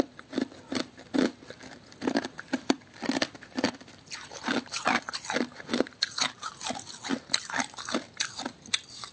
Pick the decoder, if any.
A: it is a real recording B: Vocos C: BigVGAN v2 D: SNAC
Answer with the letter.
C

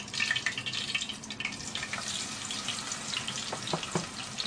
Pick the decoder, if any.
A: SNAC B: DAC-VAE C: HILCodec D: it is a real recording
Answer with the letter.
D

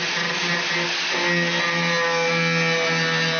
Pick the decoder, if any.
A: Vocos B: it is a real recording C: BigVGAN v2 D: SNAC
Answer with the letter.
B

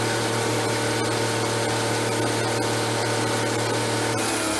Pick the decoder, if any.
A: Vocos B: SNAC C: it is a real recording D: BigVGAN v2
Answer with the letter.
C